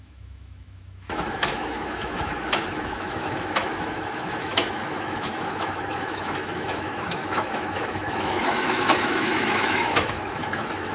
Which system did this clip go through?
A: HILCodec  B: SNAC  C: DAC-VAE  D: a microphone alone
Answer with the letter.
C